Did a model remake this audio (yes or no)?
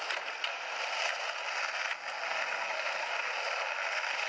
no